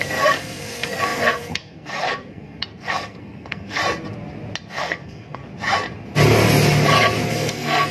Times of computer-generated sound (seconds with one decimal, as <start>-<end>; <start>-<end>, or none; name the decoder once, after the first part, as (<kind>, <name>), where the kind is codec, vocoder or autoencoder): 0.0-3.8 (codec, SNAC); 4.7-5.4; 7.3-7.9